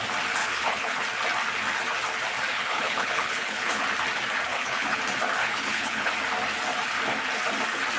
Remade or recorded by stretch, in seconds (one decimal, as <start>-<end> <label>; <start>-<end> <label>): 0.0-0.4 recorded; 0.4-1.0 remade; 1.0-2.5 recorded; 2.5-3.8 remade; 3.8-4.5 recorded; 4.5-5.0 remade; 5.0-5.4 recorded; 5.4-6.1 remade; 6.1-8.0 recorded